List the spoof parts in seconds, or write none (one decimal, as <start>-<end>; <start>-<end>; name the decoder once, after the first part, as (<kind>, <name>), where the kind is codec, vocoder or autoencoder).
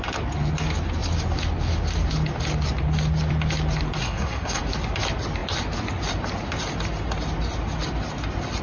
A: 4.0-4.6 (codec, SNAC)